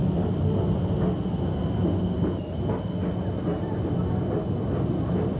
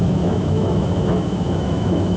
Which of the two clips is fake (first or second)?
second